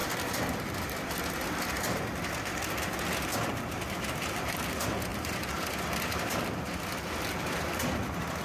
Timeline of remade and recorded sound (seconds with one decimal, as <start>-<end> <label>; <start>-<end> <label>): 0.0-2.0 remade; 2.0-3.3 recorded; 3.3-4.4 remade; 4.4-5.1 recorded; 5.1-6.3 remade; 6.3-8.4 recorded